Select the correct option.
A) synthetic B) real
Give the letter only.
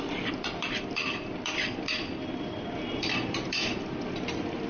A